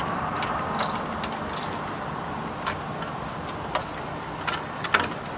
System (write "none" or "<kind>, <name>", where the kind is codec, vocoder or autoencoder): none